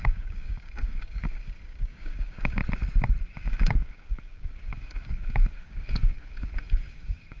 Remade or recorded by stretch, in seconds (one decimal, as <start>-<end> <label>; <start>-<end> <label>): 0.0-2.6 remade; 2.6-3.2 recorded; 3.2-7.4 remade